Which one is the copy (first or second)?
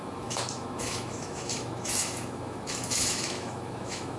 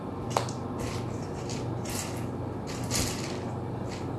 first